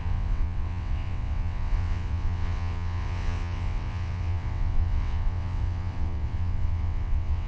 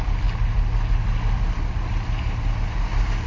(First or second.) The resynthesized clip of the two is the first